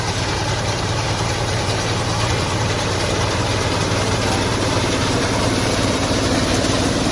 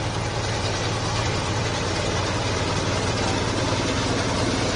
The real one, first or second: second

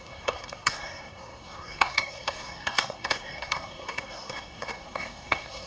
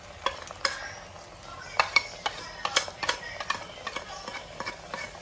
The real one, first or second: second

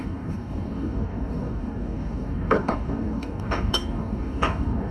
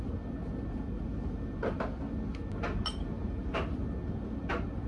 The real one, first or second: second